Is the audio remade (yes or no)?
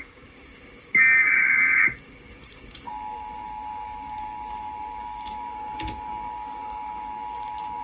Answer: yes